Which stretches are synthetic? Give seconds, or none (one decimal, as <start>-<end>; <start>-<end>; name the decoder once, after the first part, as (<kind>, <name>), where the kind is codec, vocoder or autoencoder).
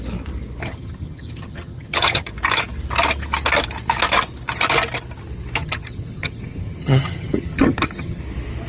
0.6-2.3 (vocoder, HiFi-GAN); 5.6-8.2